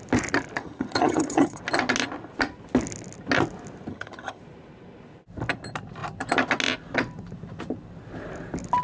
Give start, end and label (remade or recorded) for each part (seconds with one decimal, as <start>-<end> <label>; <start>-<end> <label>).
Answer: 0.0-0.6 recorded; 0.6-1.6 remade; 1.6-3.9 recorded; 3.9-4.4 remade; 4.4-8.8 recorded